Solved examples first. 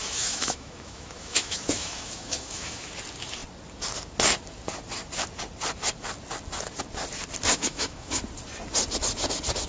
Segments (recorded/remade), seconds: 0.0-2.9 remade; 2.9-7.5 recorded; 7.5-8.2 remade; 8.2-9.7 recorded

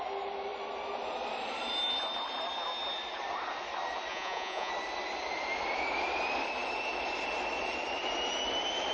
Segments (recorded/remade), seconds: 0.0-4.1 recorded; 4.1-4.7 remade; 4.7-8.9 recorded

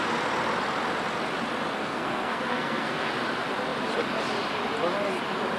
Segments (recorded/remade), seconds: 0.0-1.8 recorded; 1.8-3.1 remade; 3.1-5.6 recorded

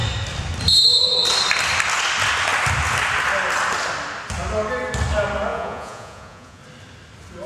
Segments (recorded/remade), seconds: 0.0-5.5 recorded; 5.5-6.6 remade; 6.6-7.5 recorded

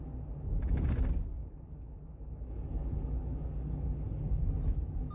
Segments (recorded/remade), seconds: 0.0-1.3 recorded; 1.3-4.4 remade; 4.4-5.1 recorded